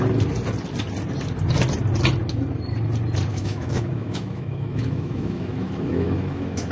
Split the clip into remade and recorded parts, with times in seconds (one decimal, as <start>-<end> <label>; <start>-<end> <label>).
0.0-3.3 recorded; 3.3-6.7 remade